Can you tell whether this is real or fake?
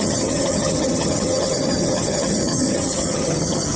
fake